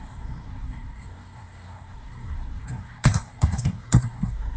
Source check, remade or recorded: remade